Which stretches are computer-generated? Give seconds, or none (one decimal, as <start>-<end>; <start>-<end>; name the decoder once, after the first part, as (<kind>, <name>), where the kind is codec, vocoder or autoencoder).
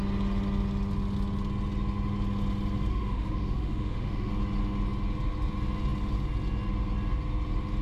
2.9-4.3 (autoencoder, DAC-VAE)